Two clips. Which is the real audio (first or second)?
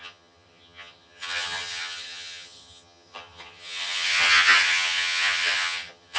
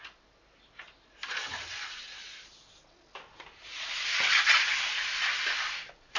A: second